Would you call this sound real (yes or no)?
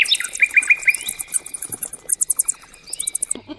yes